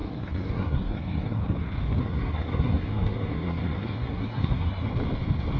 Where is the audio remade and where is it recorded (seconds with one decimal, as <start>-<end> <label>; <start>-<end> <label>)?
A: 0.0-1.4 remade; 1.4-2.0 recorded; 2.0-4.9 remade; 4.9-5.6 recorded